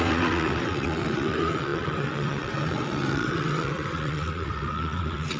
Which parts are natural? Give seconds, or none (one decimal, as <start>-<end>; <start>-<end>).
none